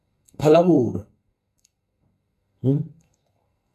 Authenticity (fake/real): fake